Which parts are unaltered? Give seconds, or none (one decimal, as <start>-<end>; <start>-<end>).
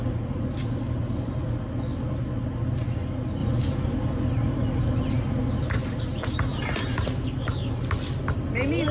0.0-8.9